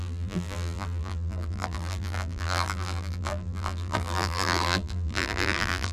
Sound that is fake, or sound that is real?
fake